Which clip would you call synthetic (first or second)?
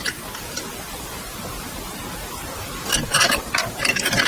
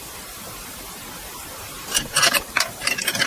second